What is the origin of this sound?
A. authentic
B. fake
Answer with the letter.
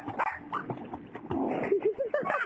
A